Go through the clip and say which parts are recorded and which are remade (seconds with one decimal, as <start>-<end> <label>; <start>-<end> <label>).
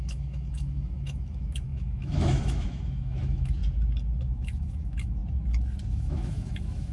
0.0-3.6 remade; 3.6-4.2 recorded; 4.2-5.2 remade; 5.2-5.9 recorded; 5.9-6.9 remade